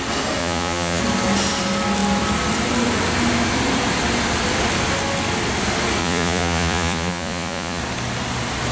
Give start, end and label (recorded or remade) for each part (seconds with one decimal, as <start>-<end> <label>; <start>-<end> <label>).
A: 0.0-0.4 recorded; 0.4-1.0 remade; 1.0-6.0 recorded; 6.0-7.8 remade; 7.8-8.7 recorded